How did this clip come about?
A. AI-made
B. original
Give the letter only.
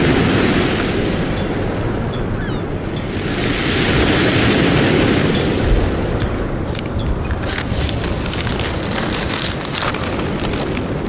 B